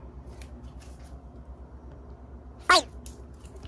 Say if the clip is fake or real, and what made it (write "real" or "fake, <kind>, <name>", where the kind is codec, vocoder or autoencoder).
real